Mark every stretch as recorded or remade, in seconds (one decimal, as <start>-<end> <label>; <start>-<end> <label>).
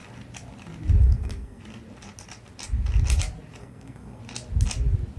0.0-1.0 recorded; 1.0-1.6 remade; 1.6-3.6 recorded; 3.6-4.2 remade; 4.2-5.2 recorded